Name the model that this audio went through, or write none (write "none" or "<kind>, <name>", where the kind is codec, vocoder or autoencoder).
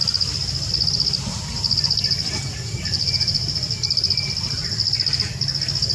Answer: none